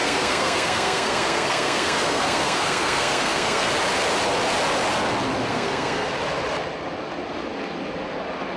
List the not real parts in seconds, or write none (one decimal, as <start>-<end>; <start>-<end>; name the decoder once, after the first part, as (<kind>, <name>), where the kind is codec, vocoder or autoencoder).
0.0-3.7 (codec, SNAC); 5.5-6.1